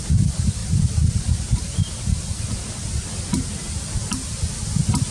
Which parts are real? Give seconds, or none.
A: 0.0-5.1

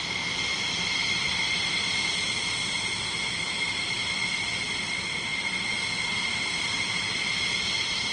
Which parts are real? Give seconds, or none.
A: 0.0-8.1

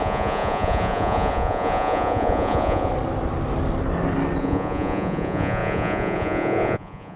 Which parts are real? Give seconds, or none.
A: 2.9-4.4

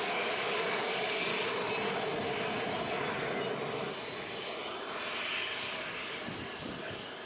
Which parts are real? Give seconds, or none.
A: 1.3-5.3; 6.2-6.8

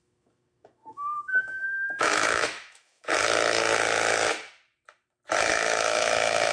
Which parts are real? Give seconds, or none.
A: 3.1-5.5